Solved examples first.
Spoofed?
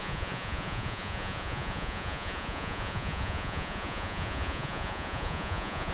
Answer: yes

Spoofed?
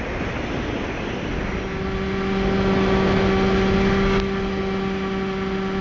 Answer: no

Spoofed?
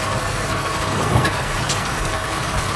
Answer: yes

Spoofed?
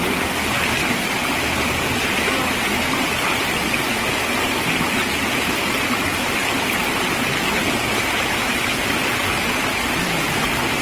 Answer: no